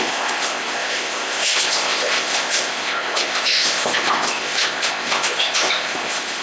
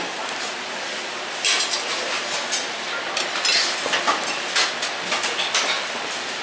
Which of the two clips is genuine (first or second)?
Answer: second